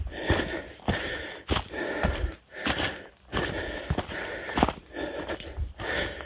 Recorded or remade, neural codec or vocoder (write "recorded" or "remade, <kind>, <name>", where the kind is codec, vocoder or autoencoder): recorded